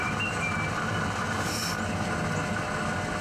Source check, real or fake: real